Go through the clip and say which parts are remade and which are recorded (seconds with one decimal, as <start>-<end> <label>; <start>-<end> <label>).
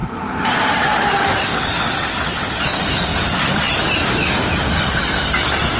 0.0-2.7 remade; 2.7-3.1 recorded; 3.1-4.8 remade; 4.8-5.8 recorded